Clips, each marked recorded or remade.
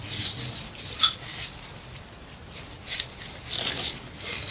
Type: recorded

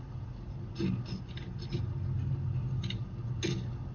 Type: recorded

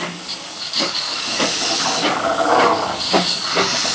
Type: remade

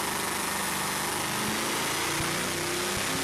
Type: recorded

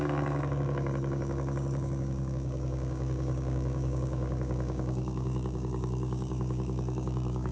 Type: remade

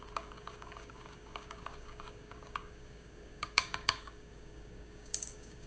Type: remade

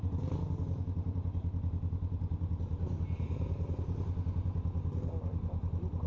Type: recorded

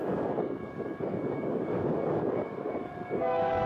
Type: remade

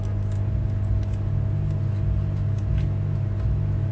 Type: recorded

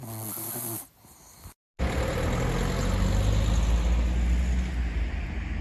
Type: recorded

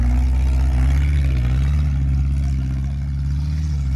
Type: recorded